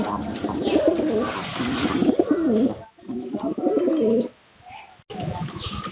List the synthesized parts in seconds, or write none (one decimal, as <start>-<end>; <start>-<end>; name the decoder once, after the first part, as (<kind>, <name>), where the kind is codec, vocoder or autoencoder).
none